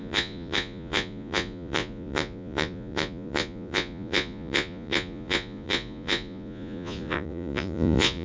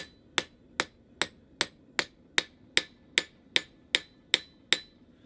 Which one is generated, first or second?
first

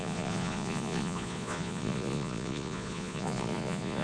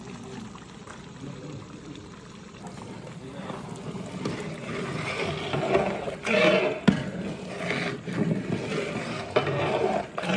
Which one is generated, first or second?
first